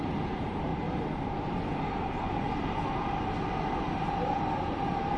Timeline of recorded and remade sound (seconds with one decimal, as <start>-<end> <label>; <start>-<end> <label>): 0.0-0.7 remade; 0.7-3.8 recorded; 3.8-5.2 remade